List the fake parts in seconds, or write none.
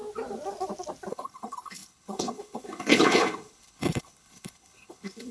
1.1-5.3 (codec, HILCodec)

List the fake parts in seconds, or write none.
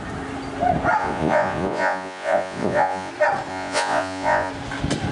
1.0-3.1 (vocoder, Vocos); 3.5-4.5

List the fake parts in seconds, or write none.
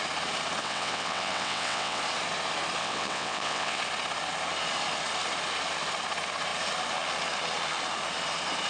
0.6-2.0 (vocoder, WaveNeXt); 2.8-3.8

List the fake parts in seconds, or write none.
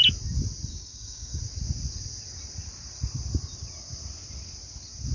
0.7-1.4 (codec, DAC)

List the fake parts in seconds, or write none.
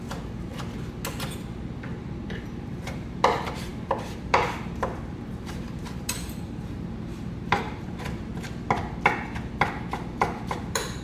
0.0-0.5 (vocoder, BigVGAN v2); 2.0-8.3; 10.2-11.0